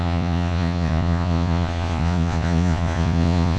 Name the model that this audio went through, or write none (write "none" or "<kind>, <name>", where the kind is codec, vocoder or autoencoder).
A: vocoder, Vocos